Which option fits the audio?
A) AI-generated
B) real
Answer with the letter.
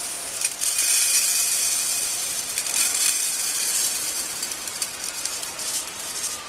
A